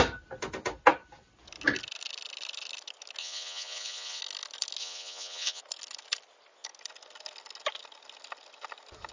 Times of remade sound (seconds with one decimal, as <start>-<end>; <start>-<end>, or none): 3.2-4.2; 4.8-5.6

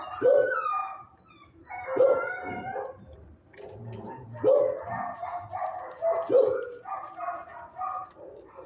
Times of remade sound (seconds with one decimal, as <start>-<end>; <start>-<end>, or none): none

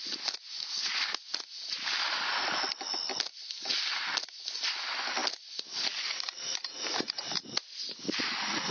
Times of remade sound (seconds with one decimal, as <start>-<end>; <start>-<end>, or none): none